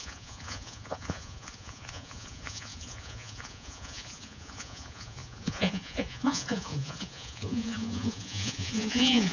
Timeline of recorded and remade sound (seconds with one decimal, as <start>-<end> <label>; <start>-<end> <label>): 0.0-9.3 remade